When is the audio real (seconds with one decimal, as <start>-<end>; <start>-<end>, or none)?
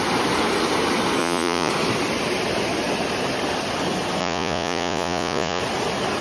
0.0-1.2; 1.7-4.2; 5.6-6.2